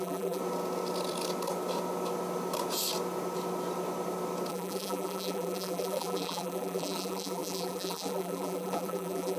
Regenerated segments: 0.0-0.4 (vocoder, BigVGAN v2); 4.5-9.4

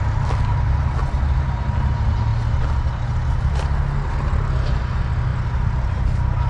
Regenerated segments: none

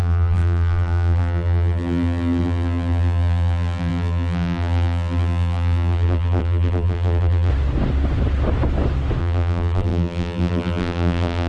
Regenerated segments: 0.0-7.5 (vocoder, BigVGAN v2); 9.2-11.5

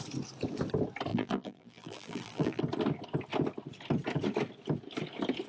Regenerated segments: 1.1-2.6 (vocoder, BigVGAN v2)

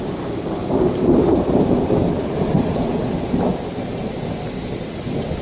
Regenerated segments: 0.6-3.4 (vocoder, BigVGAN v2)

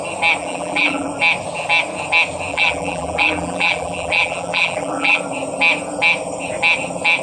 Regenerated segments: 0.4-1.1 (vocoder, BigVGAN v2); 2.5-5.2